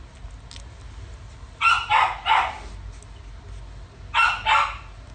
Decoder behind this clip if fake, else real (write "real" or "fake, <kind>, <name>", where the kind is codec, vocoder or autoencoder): real